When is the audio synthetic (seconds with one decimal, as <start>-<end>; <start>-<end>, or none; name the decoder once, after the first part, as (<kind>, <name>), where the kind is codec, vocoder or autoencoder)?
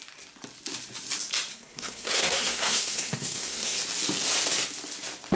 1.5-3.8 (codec, SNAC)